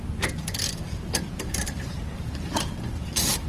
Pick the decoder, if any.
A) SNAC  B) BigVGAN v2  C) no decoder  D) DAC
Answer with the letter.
B